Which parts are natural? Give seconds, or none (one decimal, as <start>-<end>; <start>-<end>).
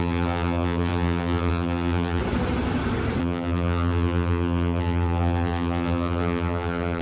2.2-3.2